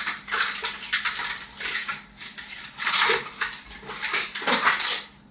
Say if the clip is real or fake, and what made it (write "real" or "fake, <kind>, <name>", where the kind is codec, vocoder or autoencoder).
real